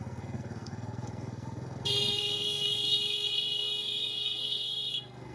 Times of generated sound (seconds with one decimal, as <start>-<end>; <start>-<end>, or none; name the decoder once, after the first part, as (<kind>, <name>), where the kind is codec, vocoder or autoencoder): 0.0-5.3 (codec, SNAC)